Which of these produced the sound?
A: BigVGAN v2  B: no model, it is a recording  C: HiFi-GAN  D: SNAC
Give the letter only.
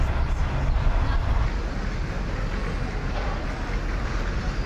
B